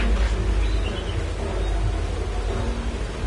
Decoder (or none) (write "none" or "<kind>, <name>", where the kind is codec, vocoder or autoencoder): none